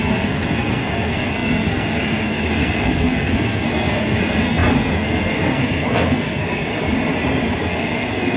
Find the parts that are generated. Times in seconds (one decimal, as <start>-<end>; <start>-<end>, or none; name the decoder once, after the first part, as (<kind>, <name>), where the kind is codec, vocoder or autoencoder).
0.0-6.7 (codec, SNAC); 7.7-8.4